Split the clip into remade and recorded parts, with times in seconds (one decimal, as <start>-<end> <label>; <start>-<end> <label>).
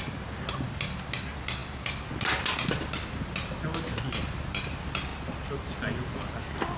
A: 0.0-6.8 recorded